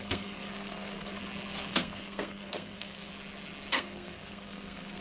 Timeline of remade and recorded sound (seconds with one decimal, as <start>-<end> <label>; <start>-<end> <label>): 0.0-1.2 remade; 1.2-1.7 recorded; 1.7-3.1 remade; 3.1-3.7 recorded; 3.7-5.0 remade